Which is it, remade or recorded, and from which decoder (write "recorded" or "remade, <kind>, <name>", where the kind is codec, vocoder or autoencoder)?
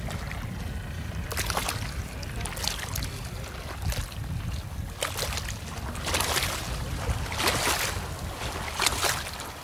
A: recorded